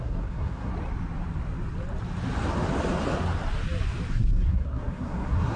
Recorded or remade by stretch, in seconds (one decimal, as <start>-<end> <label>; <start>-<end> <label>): 0.0-0.7 remade; 0.7-4.1 recorded; 4.1-5.6 remade